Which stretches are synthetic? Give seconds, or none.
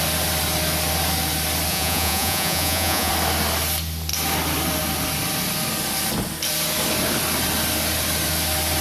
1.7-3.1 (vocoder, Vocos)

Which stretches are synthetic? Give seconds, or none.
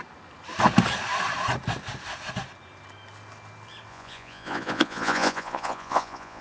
3.9-6.4 (vocoder, Vocos)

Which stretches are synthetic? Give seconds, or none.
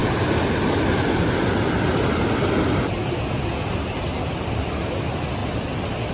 none